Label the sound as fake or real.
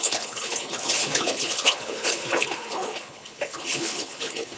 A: fake